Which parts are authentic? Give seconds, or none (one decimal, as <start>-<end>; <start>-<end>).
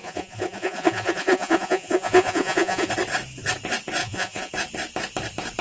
2.9-4.0; 4.5-5.6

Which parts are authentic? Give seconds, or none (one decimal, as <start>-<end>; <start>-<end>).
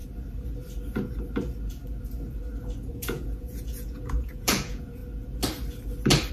0.0-2.9; 5.0-6.3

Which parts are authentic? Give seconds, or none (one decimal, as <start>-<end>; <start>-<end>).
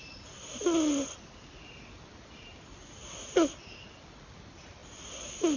0.0-5.6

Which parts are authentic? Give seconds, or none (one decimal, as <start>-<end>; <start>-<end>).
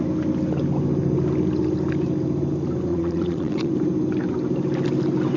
0.0-2.9; 3.7-5.4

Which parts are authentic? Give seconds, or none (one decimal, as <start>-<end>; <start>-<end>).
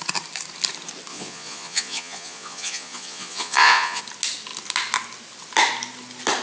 0.0-1.1; 4.0-6.4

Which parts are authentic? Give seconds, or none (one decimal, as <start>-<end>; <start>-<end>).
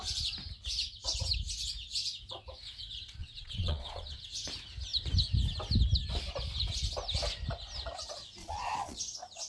0.0-3.2; 4.2-8.4; 9.0-9.5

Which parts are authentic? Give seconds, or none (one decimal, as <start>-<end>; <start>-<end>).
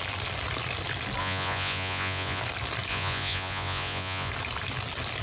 0.0-1.2; 2.4-2.9; 4.3-5.2